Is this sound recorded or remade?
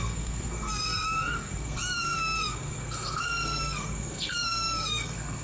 remade